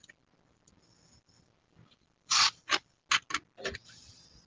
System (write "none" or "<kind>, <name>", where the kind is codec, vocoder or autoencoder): none